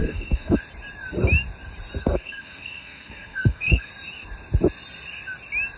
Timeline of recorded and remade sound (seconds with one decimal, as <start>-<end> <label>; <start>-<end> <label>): 0.0-0.6 remade; 0.6-2.0 recorded; 2.0-3.9 remade; 3.9-5.8 recorded